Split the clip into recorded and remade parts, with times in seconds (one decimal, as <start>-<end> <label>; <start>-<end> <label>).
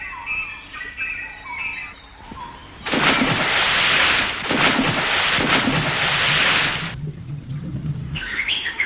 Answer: 0.0-8.0 recorded; 8.0-8.9 remade